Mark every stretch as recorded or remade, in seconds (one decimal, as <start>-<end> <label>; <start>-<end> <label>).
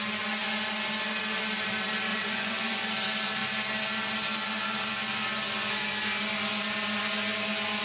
0.0-2.1 recorded; 2.1-2.9 remade; 2.9-7.8 recorded